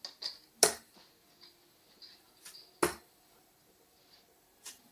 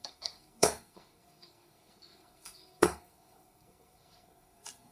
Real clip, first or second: first